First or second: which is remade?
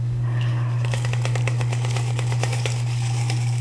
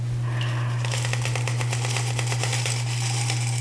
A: first